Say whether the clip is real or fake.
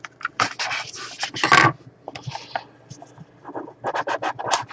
real